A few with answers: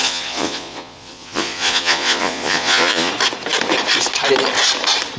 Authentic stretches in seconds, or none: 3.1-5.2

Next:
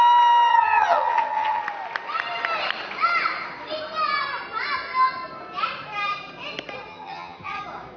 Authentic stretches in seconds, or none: 0.0-0.5; 1.6-6.9; 7.6-8.0

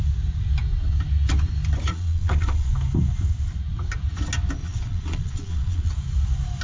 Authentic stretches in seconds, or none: 0.0-1.9; 2.7-4.6; 5.9-6.6

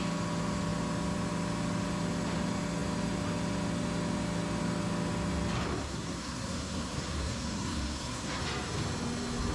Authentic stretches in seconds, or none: 0.0-5.8; 8.4-9.5